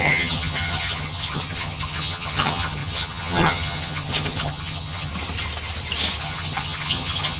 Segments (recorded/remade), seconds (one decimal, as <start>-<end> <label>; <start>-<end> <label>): 0.0-5.1 remade; 5.1-6.2 recorded; 6.2-7.4 remade